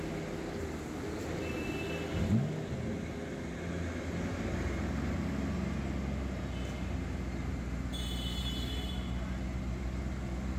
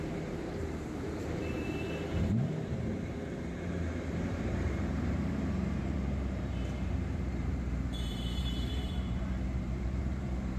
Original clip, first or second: first